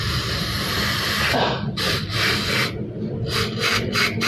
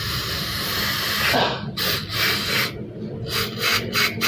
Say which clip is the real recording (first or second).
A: second